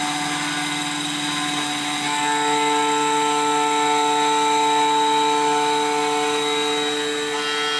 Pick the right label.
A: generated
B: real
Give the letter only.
B